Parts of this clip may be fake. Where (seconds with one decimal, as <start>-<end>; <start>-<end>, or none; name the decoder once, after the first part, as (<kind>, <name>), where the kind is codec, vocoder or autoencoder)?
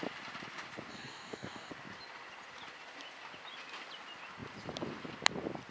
0.9-1.7 (codec, DAC)